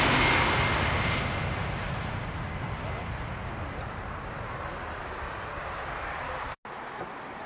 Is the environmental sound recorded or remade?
recorded